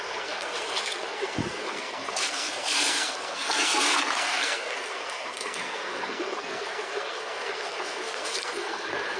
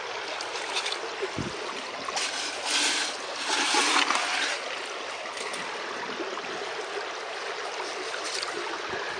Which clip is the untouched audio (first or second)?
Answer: second